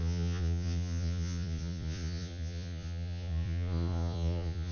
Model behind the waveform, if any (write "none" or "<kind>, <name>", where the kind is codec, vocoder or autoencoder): vocoder, Vocos